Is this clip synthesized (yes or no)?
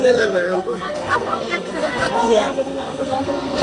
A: yes